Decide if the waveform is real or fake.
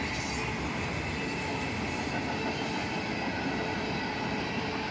real